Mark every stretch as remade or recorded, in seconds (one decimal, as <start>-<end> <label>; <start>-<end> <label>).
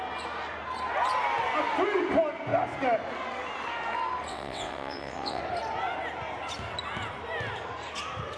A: 0.0-4.3 recorded; 4.3-5.4 remade; 5.4-8.4 recorded